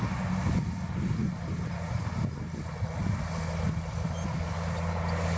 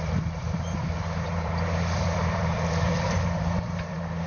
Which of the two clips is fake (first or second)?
second